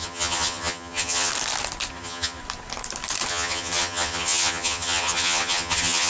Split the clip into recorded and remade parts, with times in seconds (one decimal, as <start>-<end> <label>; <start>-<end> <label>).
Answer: 0.0-1.3 remade; 1.3-1.9 recorded; 1.9-2.4 remade; 2.4-3.3 recorded; 3.3-6.1 remade